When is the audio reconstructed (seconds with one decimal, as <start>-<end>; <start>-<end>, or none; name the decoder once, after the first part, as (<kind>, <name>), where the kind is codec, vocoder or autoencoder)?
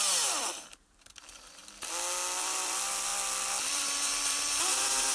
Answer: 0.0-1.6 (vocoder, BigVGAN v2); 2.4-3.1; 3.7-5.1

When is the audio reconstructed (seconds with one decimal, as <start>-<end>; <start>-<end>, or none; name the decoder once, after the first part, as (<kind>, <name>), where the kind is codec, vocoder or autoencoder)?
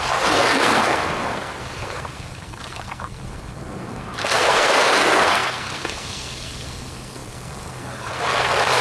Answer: 0.0-8.8 (codec, SNAC)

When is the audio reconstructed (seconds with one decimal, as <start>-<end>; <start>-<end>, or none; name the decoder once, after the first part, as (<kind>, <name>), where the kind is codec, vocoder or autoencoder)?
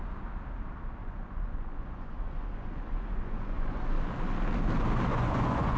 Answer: 1.0-3.8 (vocoder, Vocos); 5.1-5.8